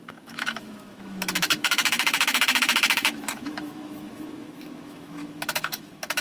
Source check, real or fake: fake